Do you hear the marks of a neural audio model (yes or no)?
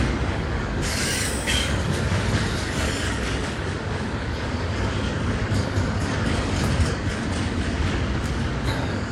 yes